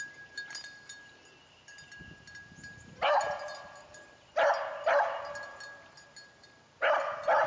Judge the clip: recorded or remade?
recorded